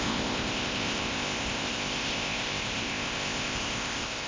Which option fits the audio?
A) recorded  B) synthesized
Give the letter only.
B